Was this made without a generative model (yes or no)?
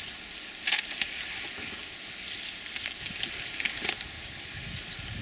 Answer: yes